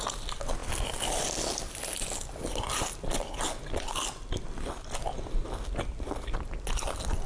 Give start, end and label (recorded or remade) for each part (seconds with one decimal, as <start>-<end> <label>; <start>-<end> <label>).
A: 0.0-7.3 recorded